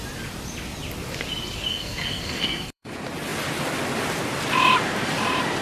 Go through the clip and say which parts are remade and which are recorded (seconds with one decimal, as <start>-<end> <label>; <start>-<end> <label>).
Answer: 0.0-1.7 recorded; 1.7-2.9 remade; 2.9-5.6 recorded